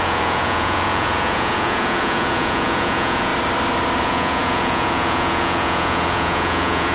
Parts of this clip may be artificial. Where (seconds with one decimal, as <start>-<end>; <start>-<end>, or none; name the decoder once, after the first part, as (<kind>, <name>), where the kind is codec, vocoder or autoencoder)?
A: 0.0-3.3 (vocoder, Vocos); 4.0-6.9